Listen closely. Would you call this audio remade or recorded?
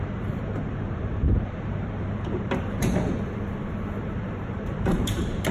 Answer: remade